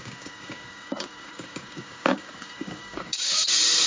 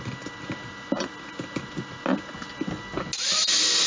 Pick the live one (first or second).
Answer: second